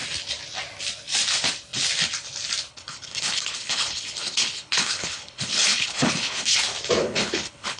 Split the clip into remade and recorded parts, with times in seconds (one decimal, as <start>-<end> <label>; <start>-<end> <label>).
0.0-2.7 recorded; 2.7-6.6 remade; 6.6-7.0 recorded; 7.0-7.8 remade